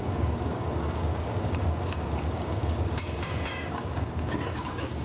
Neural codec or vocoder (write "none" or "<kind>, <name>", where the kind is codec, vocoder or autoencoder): codec, DAC